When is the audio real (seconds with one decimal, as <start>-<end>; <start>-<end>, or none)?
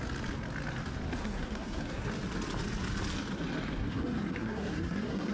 0.0-1.2; 2.1-3.8